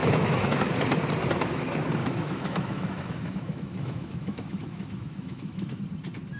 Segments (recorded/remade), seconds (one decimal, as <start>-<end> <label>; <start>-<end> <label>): 0.0-0.6 remade; 0.6-2.0 recorded; 2.0-5.8 remade; 5.8-6.4 recorded